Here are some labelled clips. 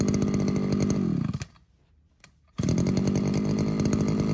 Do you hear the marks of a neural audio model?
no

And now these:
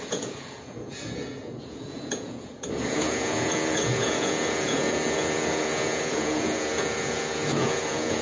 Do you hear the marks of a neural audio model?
yes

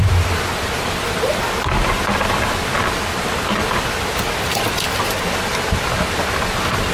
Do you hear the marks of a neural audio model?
no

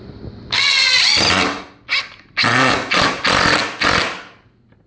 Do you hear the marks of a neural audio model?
no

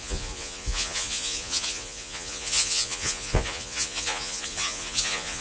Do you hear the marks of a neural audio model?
yes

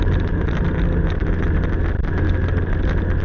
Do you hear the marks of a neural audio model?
no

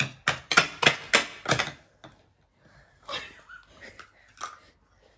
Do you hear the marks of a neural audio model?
no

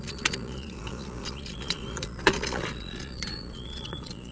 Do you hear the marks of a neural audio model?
yes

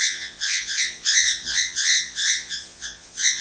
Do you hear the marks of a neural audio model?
yes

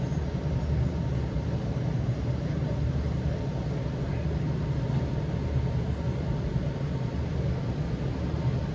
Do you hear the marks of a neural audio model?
no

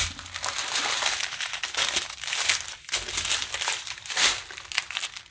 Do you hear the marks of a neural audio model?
no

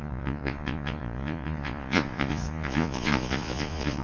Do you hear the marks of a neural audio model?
yes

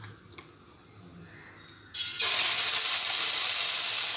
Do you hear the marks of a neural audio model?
no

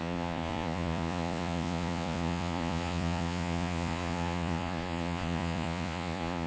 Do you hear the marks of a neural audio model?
yes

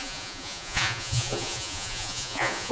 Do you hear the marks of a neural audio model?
yes